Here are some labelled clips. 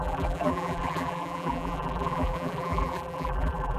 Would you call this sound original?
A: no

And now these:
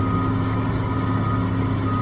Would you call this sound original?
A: yes